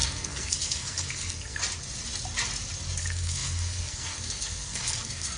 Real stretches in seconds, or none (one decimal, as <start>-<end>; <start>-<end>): 1.6-3.0